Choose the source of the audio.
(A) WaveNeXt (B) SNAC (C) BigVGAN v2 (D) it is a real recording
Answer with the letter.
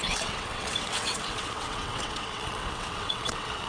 A